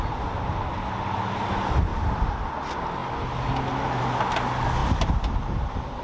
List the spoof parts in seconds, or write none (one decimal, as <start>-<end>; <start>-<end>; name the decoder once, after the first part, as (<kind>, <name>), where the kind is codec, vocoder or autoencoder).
1.9-2.5 (vocoder, BigVGAN v2)